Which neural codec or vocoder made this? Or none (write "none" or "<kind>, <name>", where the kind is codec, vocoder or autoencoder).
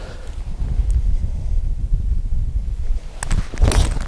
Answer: none